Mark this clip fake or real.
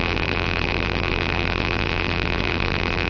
fake